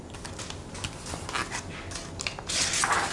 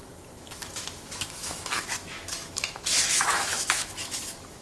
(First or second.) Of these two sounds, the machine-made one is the second